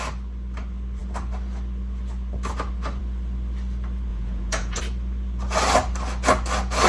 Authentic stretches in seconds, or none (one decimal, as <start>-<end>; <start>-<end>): 0.0-4.1; 4.8-6.9